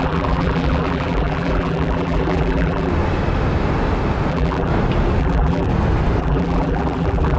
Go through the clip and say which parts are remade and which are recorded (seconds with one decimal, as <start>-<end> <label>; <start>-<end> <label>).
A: 0.0-2.9 remade; 2.9-4.3 recorded; 4.3-4.7 remade; 4.7-5.2 recorded; 5.2-5.7 remade; 5.7-6.2 recorded; 6.2-7.4 remade